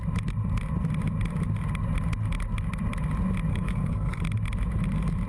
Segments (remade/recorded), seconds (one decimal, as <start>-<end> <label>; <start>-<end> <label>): 0.0-3.5 recorded; 3.5-4.2 remade; 4.2-5.3 recorded